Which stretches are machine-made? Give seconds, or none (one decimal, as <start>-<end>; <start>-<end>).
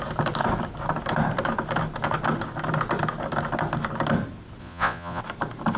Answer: 4.6-5.2